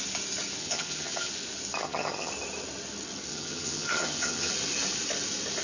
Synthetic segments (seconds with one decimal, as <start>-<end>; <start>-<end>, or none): 0.6-1.3; 1.8-2.3; 3.3-4.5

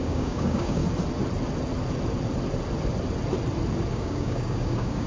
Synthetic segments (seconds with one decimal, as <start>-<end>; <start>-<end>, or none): 0.0-0.8; 3.9-5.1

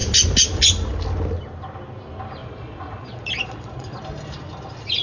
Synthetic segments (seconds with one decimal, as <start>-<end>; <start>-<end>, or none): 2.4-4.0

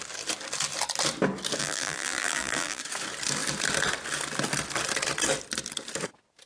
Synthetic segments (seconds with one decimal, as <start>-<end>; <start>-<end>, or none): 1.6-2.8

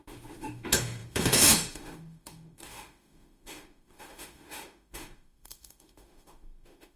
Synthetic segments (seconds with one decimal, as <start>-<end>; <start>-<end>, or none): 0.0-7.0

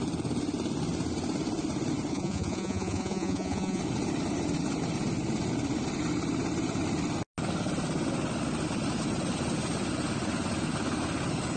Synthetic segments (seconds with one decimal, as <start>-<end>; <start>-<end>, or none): 2.1-3.8